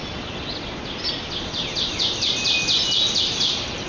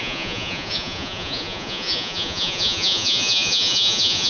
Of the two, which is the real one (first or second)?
first